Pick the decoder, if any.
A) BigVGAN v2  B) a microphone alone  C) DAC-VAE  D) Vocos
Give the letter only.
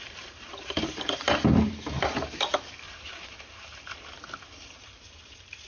A